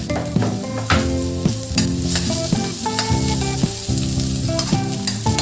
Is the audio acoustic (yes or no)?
yes